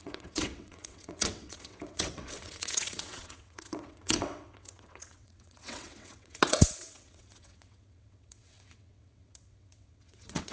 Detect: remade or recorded remade